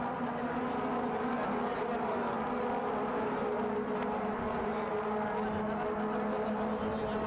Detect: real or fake real